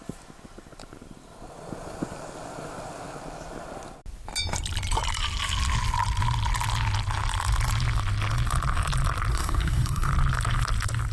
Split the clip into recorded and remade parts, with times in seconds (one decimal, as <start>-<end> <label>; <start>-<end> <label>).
0.0-9.3 recorded; 9.3-10.1 remade; 10.1-11.1 recorded